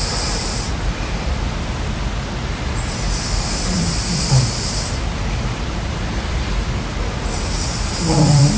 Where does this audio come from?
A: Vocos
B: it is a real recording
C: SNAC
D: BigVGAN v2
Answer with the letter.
D